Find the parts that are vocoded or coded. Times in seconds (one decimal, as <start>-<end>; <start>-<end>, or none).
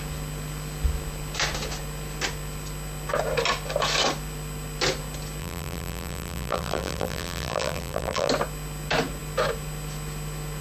5.4-8.3